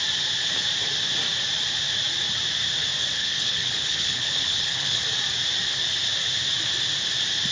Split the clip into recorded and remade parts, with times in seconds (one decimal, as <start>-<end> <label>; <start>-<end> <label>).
0.0-3.2 recorded; 3.2-5.0 remade; 5.0-7.5 recorded